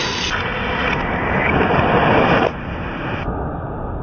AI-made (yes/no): no